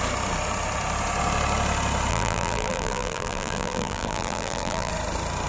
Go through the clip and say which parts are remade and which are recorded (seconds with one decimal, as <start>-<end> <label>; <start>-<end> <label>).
0.0-2.1 recorded; 2.1-4.9 remade; 4.9-5.5 recorded